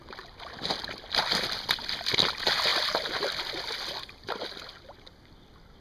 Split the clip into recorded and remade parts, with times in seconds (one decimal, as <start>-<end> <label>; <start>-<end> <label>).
0.0-5.8 recorded